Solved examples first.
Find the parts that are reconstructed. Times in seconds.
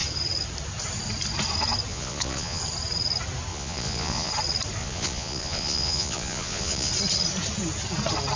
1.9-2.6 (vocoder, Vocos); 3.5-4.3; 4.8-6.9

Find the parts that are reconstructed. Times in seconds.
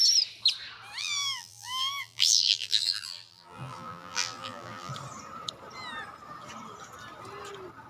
1.0-4.9 (vocoder, BigVGAN v2)